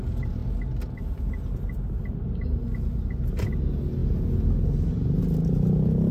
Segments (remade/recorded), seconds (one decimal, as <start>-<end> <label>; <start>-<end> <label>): 0.0-6.1 recorded

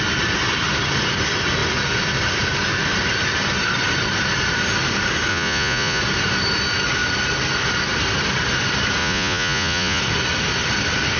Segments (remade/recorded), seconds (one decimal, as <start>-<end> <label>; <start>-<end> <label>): 0.0-5.3 recorded; 5.3-6.0 remade; 6.0-9.0 recorded; 9.0-10.0 remade; 10.0-11.2 recorded